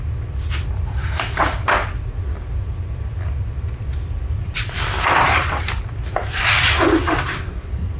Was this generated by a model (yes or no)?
no